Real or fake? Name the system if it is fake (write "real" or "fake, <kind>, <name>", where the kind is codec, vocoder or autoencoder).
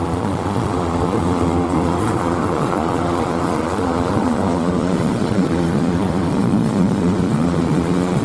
fake, vocoder, Vocos